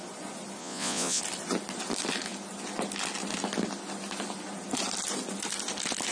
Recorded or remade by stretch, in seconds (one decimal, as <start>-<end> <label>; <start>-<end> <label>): 0.0-0.6 recorded; 0.6-1.2 remade; 1.2-6.1 recorded